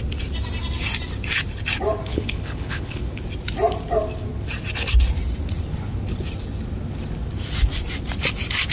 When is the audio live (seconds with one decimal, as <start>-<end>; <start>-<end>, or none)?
0.0-2.1; 3.2-8.7